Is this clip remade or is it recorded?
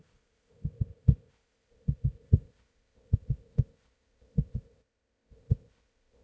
remade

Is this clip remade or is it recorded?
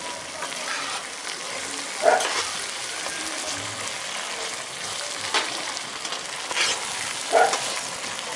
recorded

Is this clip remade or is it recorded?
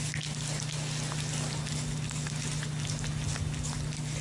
recorded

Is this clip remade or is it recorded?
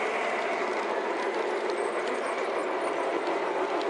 recorded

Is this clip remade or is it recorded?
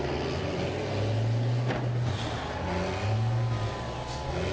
recorded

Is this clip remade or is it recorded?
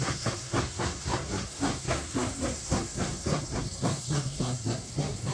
remade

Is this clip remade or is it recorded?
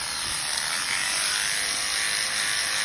remade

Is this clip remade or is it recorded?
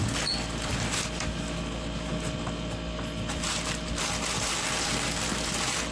recorded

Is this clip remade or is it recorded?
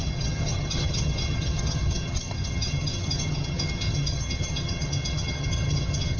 remade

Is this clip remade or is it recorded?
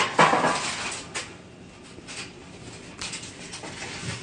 recorded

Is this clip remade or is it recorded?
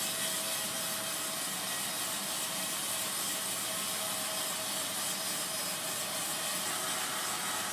recorded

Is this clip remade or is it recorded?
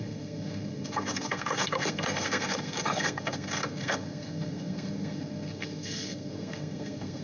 remade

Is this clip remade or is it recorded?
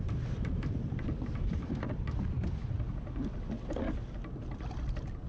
recorded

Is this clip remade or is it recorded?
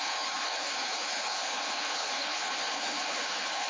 remade